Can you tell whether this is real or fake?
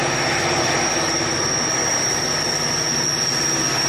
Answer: real